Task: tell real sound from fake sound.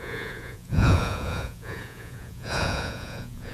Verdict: fake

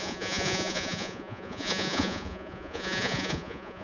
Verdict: fake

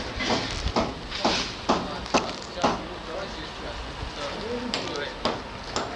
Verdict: real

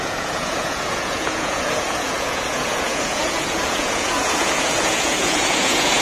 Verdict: fake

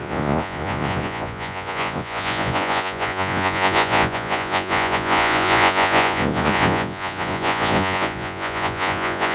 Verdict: fake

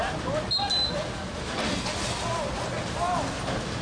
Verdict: real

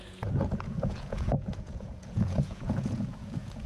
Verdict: fake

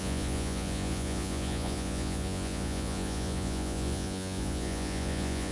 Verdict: fake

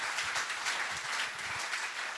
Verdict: real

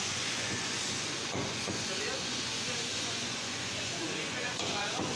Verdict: fake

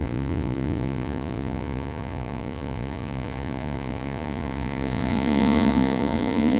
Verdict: fake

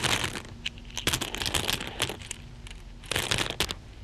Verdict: real